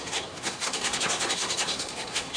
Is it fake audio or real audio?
fake